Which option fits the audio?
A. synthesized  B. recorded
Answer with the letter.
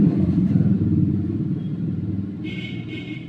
A